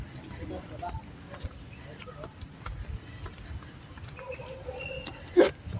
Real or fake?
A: real